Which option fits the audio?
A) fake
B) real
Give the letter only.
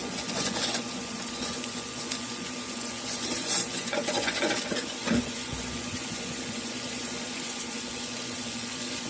A